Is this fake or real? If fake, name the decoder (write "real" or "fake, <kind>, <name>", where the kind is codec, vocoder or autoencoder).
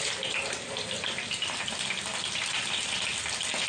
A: real